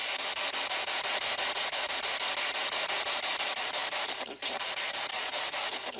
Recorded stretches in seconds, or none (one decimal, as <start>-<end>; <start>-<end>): 0.0-3.8; 5.0-6.0